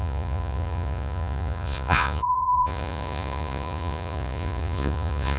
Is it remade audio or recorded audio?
remade